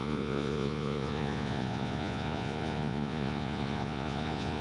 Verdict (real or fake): fake